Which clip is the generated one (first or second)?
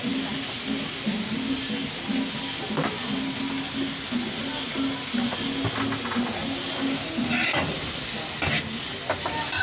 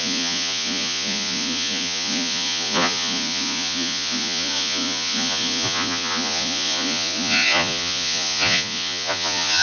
second